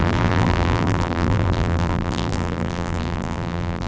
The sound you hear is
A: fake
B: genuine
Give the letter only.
A